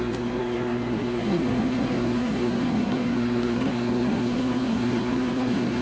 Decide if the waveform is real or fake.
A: fake